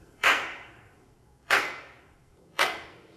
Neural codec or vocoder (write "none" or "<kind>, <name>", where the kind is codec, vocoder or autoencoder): codec, SNAC